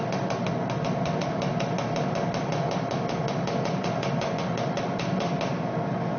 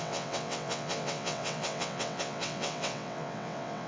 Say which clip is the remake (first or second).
second